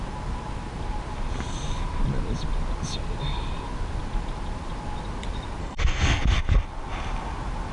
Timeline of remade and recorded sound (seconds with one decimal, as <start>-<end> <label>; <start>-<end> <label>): 0.0-5.6 recorded; 5.6-6.2 remade; 6.2-7.7 recorded